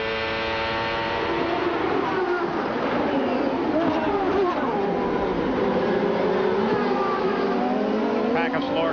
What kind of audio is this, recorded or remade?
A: recorded